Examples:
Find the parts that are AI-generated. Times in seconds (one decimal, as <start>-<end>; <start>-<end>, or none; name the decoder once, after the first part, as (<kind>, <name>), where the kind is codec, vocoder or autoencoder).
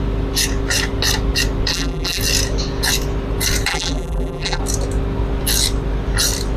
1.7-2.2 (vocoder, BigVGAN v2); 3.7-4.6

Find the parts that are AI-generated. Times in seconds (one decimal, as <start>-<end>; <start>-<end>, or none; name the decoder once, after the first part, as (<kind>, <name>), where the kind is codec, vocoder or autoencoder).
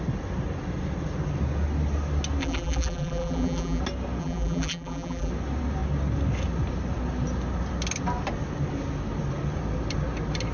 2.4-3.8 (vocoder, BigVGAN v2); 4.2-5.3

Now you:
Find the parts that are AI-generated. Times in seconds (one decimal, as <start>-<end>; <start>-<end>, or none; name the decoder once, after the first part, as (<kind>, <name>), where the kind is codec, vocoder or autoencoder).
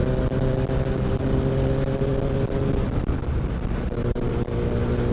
none